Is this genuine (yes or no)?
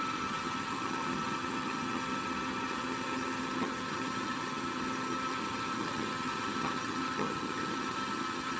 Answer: no